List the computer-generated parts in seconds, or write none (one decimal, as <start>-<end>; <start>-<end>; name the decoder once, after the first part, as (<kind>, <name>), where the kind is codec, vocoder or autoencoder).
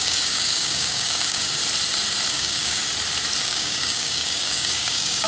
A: 0.0-1.6 (codec, DAC); 2.3-2.8; 3.4-5.3